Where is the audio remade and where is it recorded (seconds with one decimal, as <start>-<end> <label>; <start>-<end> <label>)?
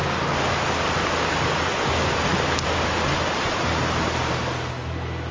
0.0-5.3 recorded